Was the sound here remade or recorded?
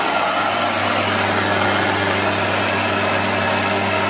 recorded